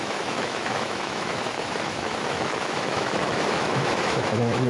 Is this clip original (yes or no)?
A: no